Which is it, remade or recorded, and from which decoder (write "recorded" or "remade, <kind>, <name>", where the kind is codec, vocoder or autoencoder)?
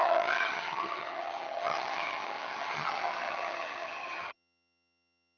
remade, vocoder, HiFi-GAN